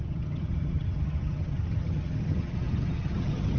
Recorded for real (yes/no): no